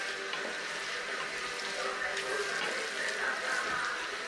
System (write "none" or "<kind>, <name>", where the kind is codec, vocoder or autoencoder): none